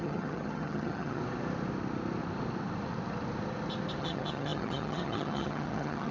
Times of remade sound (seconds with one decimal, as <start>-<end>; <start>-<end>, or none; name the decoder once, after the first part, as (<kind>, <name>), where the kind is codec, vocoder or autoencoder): 0.0-1.2 (vocoder, HiFi-GAN); 4.0-6.1